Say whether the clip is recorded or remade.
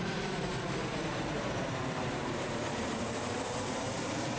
remade